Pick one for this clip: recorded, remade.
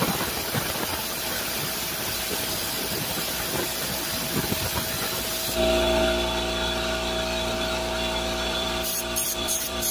remade